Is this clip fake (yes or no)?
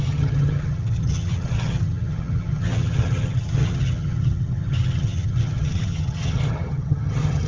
yes